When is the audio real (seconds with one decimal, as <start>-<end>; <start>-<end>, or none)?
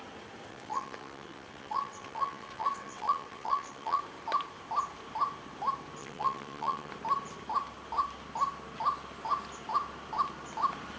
0.0-0.5; 4.0-6.0; 6.9-11.0